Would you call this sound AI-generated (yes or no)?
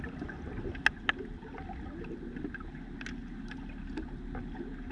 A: no